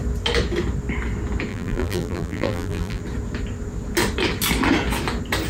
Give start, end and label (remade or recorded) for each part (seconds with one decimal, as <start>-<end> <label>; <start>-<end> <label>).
0.0-1.5 recorded; 1.5-3.0 remade; 3.0-5.5 recorded